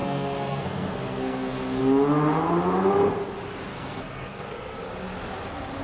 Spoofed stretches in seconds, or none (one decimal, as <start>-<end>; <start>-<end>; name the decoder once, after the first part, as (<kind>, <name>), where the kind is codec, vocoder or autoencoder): 0.0-1.8 (codec, SNAC); 3.7-4.8